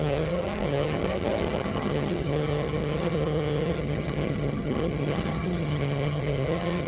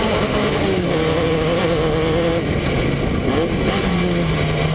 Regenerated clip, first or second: first